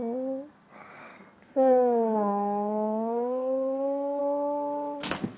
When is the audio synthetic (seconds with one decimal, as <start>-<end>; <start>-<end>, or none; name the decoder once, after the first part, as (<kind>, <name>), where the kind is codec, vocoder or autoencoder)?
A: 1.0-4.2 (codec, SNAC)